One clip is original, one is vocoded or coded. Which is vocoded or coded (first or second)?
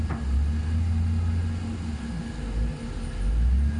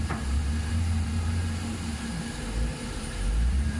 second